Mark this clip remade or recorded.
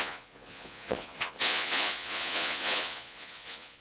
remade